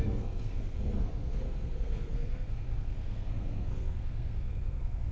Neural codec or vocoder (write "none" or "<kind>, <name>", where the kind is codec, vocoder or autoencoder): codec, SNAC